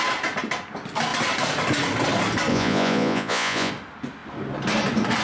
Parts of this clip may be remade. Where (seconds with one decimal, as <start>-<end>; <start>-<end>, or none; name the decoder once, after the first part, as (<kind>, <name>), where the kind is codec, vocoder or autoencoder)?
2.5-3.7 (vocoder, Vocos)